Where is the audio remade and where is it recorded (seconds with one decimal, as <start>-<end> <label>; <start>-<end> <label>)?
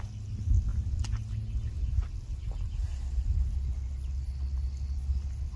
0.0-5.6 recorded